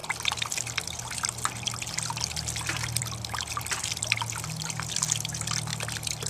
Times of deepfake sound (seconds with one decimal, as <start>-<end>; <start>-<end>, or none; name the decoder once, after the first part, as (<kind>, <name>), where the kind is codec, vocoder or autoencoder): none